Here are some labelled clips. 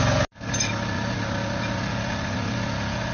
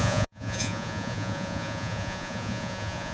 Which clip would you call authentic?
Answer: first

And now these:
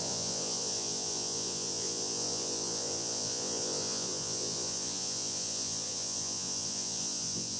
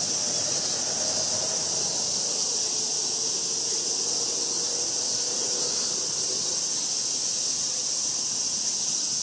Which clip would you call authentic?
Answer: second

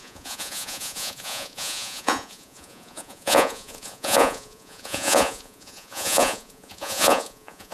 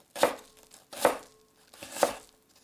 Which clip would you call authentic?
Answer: second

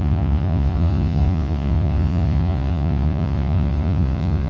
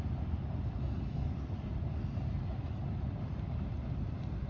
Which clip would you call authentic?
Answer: second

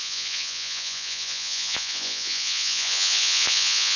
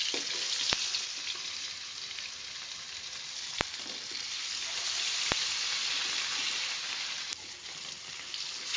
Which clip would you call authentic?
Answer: second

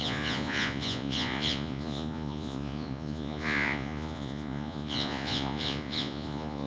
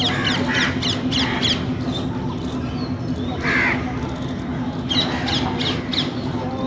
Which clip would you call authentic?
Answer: second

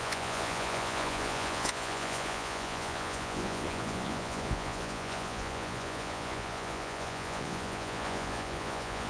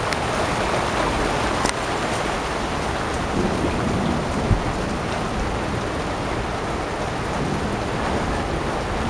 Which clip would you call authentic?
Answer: second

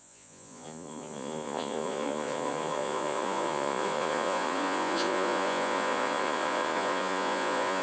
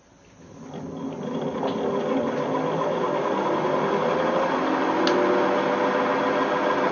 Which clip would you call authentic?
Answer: second